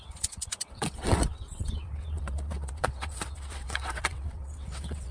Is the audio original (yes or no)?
no